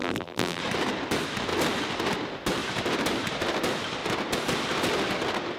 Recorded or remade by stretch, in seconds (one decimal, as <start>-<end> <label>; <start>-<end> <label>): 0.0-0.6 remade; 0.6-5.6 recorded